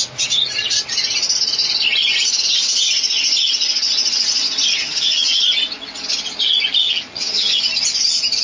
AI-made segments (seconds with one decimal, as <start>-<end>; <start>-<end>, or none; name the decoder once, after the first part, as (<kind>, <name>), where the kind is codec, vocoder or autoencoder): 4.7-5.4 (vocoder, HiFi-GAN); 6.8-7.6